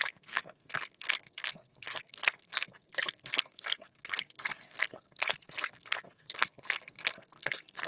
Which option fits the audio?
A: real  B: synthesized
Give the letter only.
B